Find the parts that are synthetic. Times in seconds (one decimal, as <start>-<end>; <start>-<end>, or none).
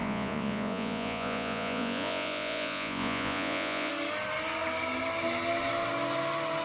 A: 0.0-3.9